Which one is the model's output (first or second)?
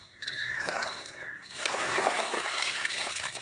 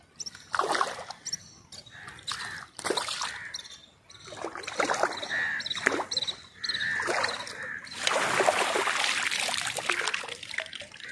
first